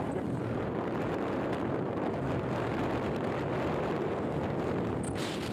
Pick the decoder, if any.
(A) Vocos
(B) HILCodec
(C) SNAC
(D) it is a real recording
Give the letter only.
D